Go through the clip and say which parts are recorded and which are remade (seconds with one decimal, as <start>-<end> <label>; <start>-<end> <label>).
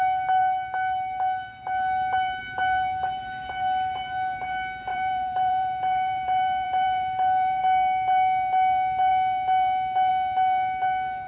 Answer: 0.0-4.9 recorded; 4.9-7.6 remade; 7.6-11.3 recorded